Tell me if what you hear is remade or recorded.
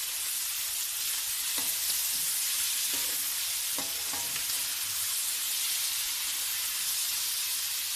recorded